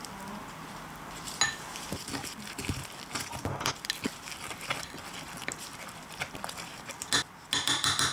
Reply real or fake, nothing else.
real